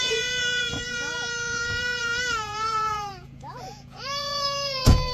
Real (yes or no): no